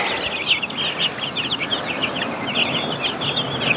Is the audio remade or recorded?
recorded